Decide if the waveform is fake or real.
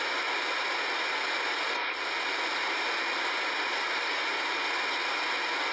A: real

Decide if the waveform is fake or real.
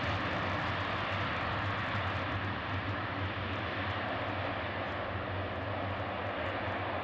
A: real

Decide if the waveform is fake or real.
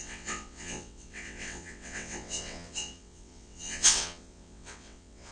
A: fake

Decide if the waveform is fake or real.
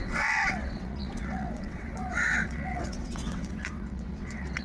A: fake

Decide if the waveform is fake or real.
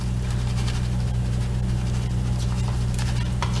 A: real